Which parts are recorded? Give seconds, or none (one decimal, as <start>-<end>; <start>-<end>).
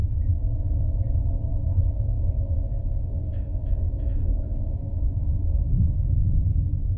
0.0-1.5; 5.7-7.0